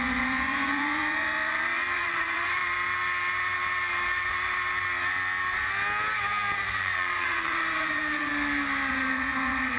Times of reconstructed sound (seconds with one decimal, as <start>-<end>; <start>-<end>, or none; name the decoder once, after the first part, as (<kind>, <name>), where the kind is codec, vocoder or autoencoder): 0.0-2.6 (vocoder, Vocos); 6.8-8.3; 8.9-9.8